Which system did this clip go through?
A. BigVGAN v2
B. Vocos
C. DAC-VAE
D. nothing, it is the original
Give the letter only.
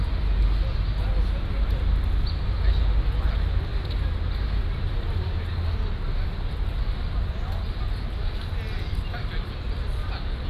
D